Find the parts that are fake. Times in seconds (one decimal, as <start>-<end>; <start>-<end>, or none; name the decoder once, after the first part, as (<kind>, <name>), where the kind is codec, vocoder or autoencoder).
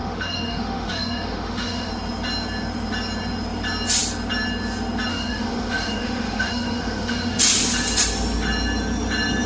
0.0-1.9 (autoencoder, DAC-VAE); 5.1-7.4